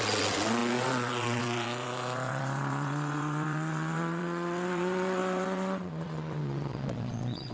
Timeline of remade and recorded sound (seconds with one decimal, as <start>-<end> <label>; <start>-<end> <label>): 0.0-7.5 remade